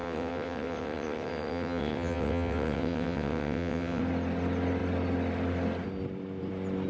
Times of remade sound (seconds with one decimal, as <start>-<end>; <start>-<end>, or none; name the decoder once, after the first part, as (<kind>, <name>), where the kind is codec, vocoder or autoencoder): 0.0-4.0 (vocoder, WaveNeXt)